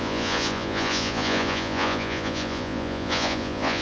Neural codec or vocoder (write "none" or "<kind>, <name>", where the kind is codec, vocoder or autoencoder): vocoder, Vocos